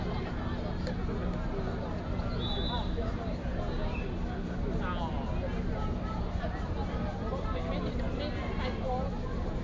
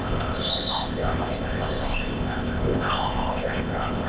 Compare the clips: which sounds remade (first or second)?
second